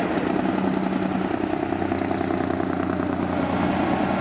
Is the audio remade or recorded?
recorded